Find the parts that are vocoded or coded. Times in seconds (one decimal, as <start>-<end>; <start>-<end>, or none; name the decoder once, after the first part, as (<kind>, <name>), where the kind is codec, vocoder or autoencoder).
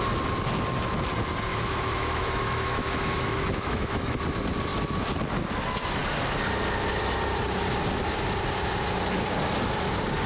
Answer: 1.5-4.2 (autoencoder, DAC-VAE)